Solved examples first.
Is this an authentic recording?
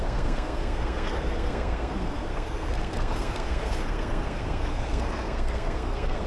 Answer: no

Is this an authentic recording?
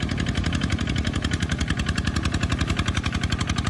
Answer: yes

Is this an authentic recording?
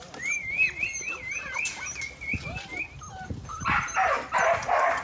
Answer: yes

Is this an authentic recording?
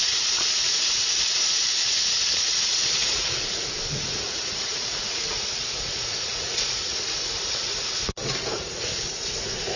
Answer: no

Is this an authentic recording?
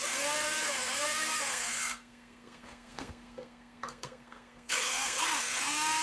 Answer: no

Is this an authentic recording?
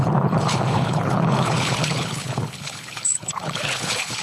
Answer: no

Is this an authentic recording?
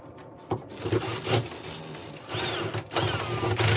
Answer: yes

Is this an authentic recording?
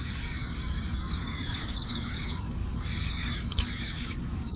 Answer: no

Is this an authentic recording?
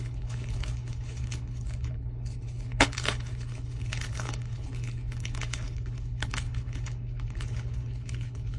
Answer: no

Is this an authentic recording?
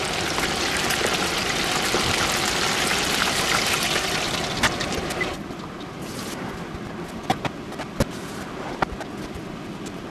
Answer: yes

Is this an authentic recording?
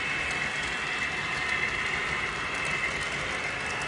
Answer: yes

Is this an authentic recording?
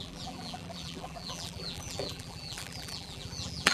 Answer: no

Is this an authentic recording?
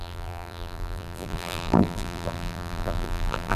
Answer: no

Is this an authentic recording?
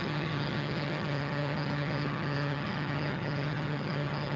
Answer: no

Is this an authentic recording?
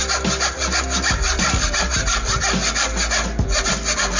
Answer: yes